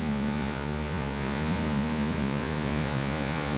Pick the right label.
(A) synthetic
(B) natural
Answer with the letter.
A